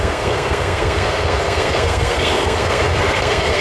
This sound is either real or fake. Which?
fake